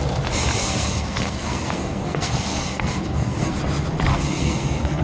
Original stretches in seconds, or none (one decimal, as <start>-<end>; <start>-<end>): 0.0-0.6; 3.6-4.1